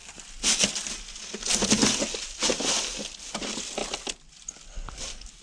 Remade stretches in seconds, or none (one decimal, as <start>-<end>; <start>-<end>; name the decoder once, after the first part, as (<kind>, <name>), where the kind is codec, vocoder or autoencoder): none